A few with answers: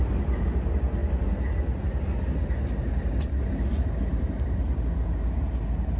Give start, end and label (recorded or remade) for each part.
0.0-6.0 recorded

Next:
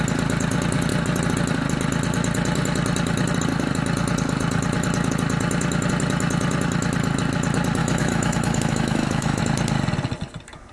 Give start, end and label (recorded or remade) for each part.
0.0-7.8 recorded; 7.8-9.4 remade; 9.4-10.7 recorded

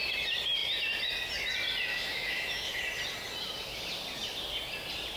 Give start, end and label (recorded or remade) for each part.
0.0-1.9 recorded; 1.9-2.8 remade; 2.8-5.2 recorded

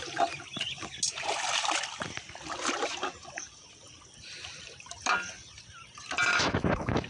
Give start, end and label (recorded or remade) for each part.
0.0-6.3 recorded; 6.3-7.1 remade

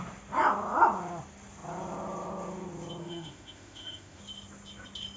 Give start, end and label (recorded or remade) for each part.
0.0-3.0 recorded; 3.0-4.2 remade; 4.2-5.2 recorded